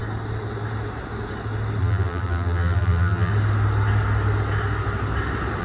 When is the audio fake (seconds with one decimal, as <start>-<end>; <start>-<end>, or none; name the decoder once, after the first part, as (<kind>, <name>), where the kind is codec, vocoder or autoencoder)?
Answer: 1.8-3.3 (vocoder, BigVGAN v2)